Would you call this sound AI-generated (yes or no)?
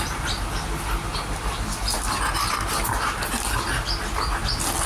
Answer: no